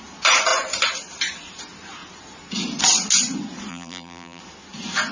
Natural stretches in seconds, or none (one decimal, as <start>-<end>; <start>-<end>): 0.0-3.7; 4.4-5.1